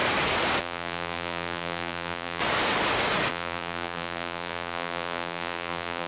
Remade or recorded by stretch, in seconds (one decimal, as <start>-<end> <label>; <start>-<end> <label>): 0.0-0.6 recorded; 0.6-2.4 remade; 2.4-3.3 recorded; 3.3-6.1 remade